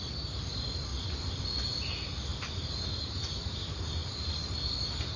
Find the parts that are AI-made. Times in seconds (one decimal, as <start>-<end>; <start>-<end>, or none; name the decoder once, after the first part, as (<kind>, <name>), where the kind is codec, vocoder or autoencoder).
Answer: 0.9-1.4 (vocoder, BigVGAN v2); 2.3-3.4; 4.0-4.6